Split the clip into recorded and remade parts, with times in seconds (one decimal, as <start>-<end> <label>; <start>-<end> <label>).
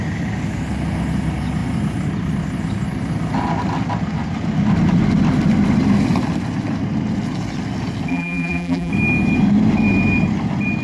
0.0-8.1 recorded; 8.1-8.9 remade; 8.9-10.8 recorded